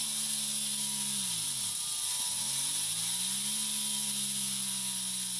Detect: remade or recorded recorded